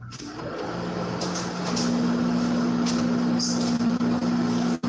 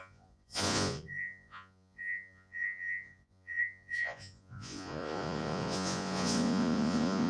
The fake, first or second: second